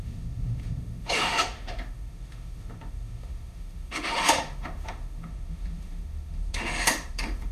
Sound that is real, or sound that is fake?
fake